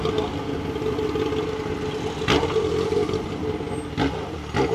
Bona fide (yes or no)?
yes